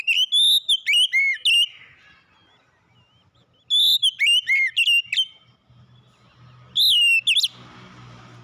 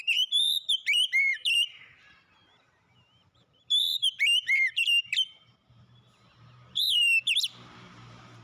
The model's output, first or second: second